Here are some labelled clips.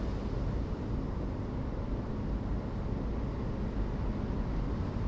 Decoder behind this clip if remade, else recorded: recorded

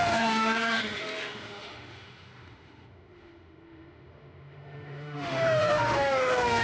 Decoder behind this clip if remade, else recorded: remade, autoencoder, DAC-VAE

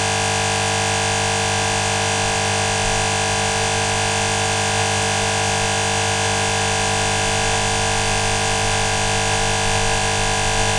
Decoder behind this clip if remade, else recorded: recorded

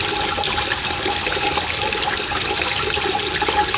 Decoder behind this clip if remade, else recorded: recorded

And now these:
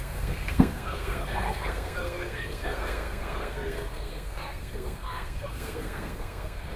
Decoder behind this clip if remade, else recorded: remade, codec, SNAC